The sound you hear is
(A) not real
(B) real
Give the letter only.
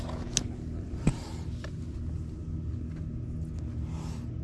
B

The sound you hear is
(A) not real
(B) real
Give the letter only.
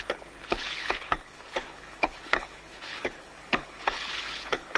A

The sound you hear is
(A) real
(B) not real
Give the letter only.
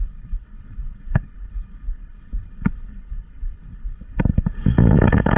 B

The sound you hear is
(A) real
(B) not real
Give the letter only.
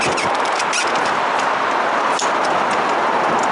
A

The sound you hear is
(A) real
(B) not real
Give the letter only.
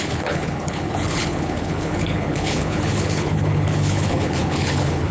B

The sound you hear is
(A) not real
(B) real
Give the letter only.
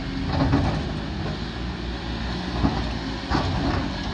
B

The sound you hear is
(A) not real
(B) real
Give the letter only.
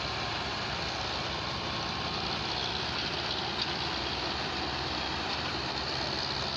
B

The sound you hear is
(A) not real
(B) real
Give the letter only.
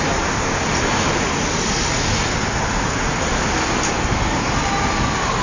B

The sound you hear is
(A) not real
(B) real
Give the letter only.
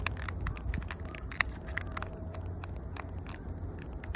B